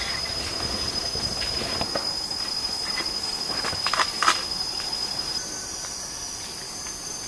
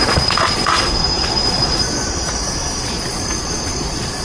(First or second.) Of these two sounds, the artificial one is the second